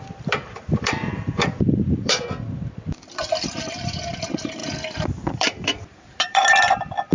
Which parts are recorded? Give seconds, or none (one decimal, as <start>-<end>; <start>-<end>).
4.6-5.3